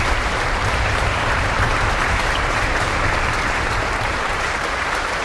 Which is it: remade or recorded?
remade